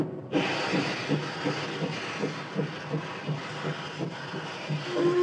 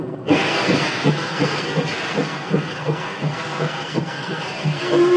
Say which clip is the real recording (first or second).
first